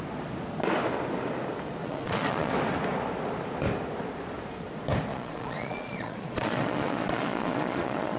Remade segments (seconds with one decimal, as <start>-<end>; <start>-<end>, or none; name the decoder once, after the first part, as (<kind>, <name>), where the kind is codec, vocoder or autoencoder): 1.8-2.5 (vocoder, Vocos); 5.1-8.2

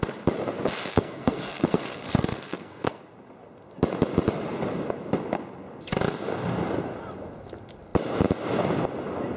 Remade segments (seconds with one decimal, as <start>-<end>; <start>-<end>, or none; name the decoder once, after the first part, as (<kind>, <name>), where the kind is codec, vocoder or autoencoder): 0.9-3.0 (codec, SNAC)

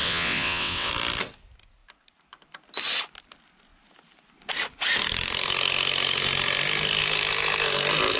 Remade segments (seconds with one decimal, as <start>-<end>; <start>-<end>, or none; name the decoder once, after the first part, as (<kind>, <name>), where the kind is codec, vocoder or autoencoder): 0.0-0.9 (vocoder, WaveNeXt)

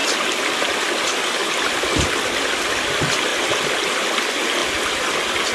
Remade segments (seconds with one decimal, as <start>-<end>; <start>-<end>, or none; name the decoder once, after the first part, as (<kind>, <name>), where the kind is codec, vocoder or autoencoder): none

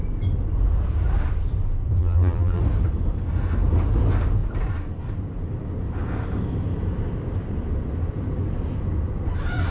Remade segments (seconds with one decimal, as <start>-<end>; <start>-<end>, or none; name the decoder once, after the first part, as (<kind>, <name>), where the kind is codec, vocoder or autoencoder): 2.0-2.6 (vocoder, BigVGAN v2)

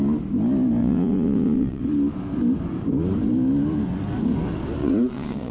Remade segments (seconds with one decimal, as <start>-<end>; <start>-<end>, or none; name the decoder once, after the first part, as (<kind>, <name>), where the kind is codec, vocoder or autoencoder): 0.8-1.8 (vocoder, Vocos); 4.8-5.5

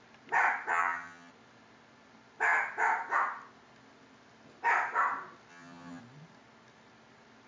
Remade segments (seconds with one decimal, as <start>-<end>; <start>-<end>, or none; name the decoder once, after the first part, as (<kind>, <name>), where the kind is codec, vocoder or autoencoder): 0.7-1.3 (vocoder, HiFi-GAN); 5.5-6.0

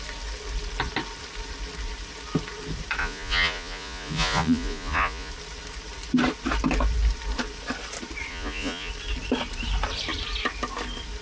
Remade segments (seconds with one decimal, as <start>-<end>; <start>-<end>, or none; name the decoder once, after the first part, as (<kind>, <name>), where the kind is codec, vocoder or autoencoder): 3.0-5.3 (vocoder, Vocos); 8.3-8.9